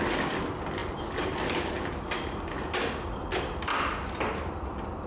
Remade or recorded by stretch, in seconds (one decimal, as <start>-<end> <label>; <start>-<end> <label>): 0.0-5.1 recorded